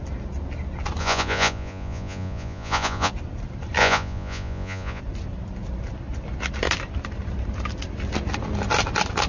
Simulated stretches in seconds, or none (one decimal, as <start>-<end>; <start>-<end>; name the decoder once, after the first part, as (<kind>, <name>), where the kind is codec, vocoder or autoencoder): 1.0-3.1 (vocoder, Vocos); 3.8-5.0